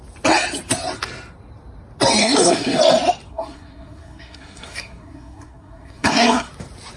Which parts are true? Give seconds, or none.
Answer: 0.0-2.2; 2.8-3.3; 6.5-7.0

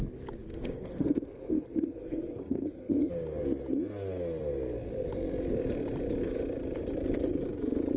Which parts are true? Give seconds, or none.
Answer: 0.0-0.5; 3.1-8.0

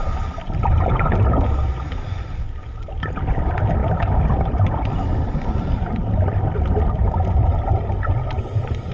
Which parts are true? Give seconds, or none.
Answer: 0.0-8.9

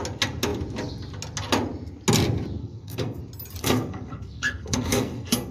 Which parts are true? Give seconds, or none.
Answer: 0.0-2.6; 3.2-3.6

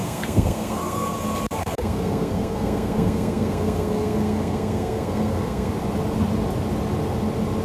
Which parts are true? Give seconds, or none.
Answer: 1.2-1.6; 5.7-7.6

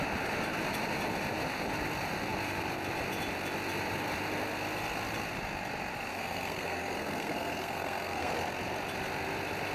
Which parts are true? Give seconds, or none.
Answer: 0.0-6.1; 8.3-9.7